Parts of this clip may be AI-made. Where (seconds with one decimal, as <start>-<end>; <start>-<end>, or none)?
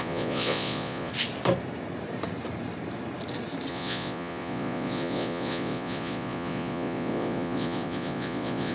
0.0-1.1; 3.7-8.7